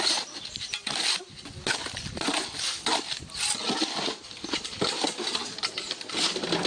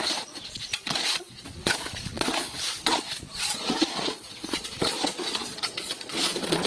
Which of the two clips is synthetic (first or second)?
second